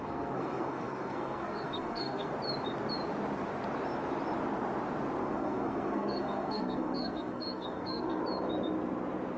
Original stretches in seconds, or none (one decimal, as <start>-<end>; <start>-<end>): 2.3-5.2; 8.2-9.4